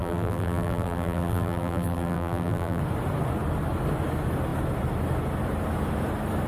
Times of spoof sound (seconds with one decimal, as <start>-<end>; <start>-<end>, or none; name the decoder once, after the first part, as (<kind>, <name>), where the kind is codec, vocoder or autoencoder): 0.0-2.8 (vocoder, BigVGAN v2)